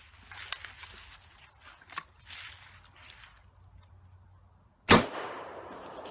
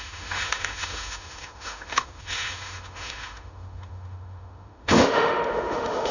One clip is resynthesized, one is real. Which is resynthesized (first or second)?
second